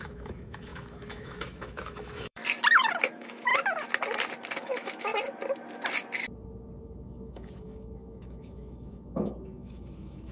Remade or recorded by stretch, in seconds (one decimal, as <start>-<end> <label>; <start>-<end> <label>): 0.0-2.4 remade; 2.4-3.0 recorded; 3.0-3.5 remade; 3.5-4.6 recorded; 4.6-5.1 remade; 5.1-6.8 recorded; 6.8-10.3 remade

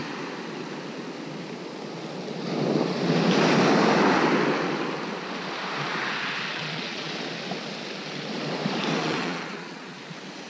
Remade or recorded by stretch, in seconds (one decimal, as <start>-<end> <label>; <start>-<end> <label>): 0.0-6.5 recorded; 6.5-7.1 remade; 7.1-9.0 recorded; 9.0-10.0 remade; 10.0-10.5 recorded

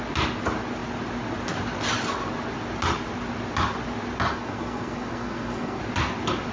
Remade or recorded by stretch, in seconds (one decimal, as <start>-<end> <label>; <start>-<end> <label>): 0.0-4.3 recorded; 4.3-5.8 remade; 5.8-6.5 recorded